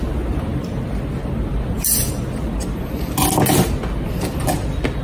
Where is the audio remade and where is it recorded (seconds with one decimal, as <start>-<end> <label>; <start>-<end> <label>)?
0.0-5.0 recorded